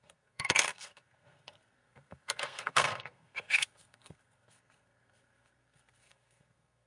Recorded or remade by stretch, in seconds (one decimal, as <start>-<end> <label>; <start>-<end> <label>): 0.0-6.9 remade